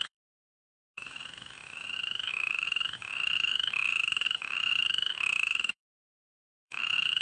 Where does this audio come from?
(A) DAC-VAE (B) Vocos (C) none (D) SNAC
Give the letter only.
A